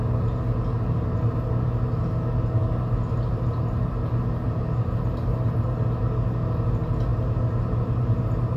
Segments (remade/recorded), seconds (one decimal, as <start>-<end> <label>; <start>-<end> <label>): 0.0-7.1 recorded; 7.1-8.2 remade; 8.2-8.6 recorded